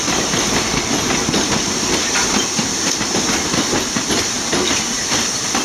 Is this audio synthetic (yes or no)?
no